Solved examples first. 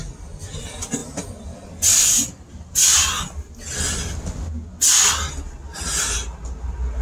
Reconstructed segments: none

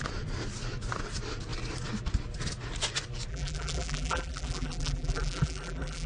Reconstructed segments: 3.3-6.1

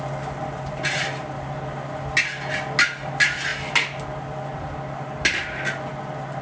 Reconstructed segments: none